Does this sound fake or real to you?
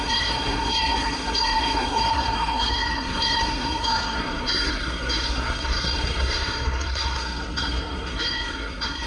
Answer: fake